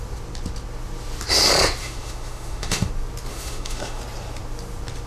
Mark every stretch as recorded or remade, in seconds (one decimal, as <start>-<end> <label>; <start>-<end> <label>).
0.0-1.8 recorded; 1.8-2.9 remade; 2.9-3.3 recorded; 3.3-4.0 remade; 4.0-5.1 recorded